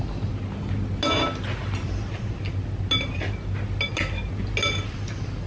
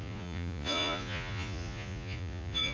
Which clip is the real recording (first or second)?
first